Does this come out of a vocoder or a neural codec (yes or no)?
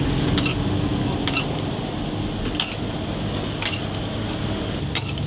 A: no